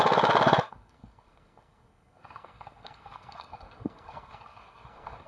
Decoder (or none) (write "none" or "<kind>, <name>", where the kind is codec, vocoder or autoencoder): codec, SNAC